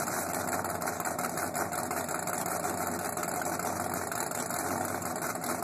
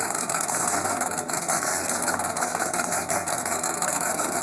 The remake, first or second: second